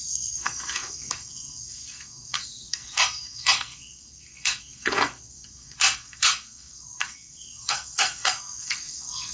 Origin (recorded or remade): remade